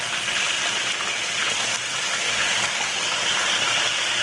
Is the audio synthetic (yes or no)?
no